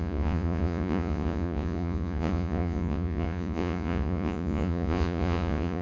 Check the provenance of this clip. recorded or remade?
remade